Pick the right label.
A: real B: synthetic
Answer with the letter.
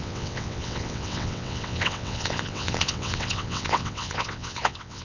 B